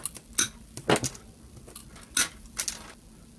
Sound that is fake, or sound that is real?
real